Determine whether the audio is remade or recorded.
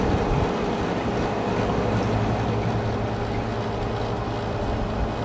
recorded